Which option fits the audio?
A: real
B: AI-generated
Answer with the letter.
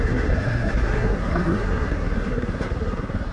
B